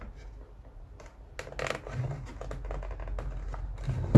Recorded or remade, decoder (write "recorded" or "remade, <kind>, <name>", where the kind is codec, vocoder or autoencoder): recorded